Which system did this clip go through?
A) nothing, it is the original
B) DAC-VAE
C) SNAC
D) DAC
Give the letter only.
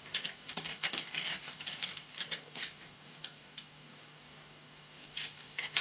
D